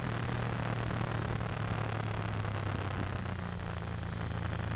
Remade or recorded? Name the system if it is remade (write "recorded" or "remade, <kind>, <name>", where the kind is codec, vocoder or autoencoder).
recorded